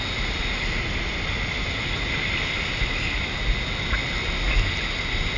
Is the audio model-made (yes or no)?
no